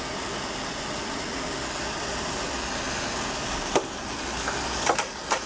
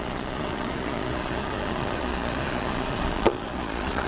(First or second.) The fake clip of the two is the second